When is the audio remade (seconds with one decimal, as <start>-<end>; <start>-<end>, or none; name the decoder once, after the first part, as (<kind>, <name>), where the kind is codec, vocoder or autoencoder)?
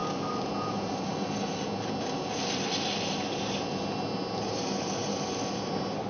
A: none